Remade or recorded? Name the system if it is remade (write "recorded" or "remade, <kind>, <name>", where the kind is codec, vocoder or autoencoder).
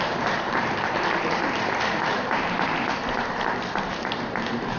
remade, vocoder, BigVGAN v2